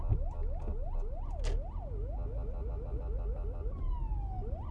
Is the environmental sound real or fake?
real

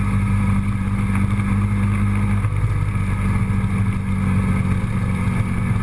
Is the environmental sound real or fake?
real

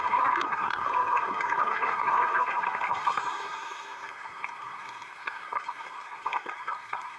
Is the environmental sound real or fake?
fake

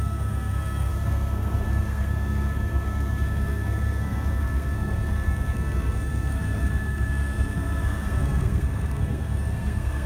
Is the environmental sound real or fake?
fake